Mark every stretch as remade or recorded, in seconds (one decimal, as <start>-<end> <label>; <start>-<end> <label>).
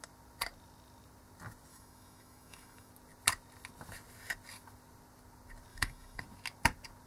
0.0-1.7 recorded; 1.7-2.9 remade; 2.9-5.7 recorded; 5.7-6.2 remade; 6.2-7.1 recorded